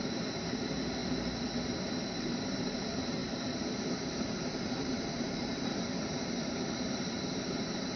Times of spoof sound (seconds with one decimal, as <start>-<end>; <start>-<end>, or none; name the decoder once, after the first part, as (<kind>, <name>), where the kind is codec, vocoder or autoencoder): 0.0-1.0 (vocoder, BigVGAN v2); 1.6-8.0